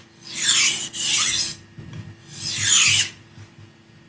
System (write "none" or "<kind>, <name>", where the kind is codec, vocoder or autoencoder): none